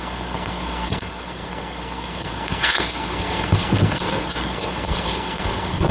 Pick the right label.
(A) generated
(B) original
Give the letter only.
A